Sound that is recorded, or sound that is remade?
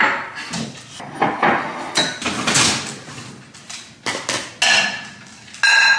recorded